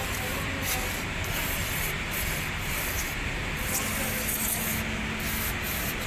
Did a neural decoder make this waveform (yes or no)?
no